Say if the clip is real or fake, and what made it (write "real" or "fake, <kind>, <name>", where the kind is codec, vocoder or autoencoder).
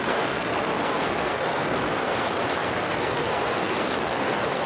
fake, codec, SNAC